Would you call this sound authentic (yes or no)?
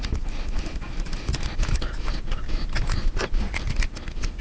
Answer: yes